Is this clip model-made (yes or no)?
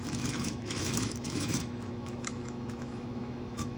yes